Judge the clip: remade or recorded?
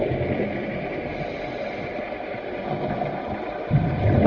recorded